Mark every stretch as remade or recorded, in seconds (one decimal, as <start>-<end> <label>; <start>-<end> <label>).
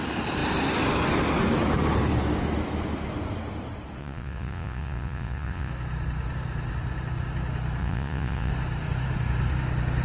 0.0-4.0 recorded; 4.0-5.7 remade; 5.7-7.8 recorded; 7.8-8.5 remade; 8.5-10.0 recorded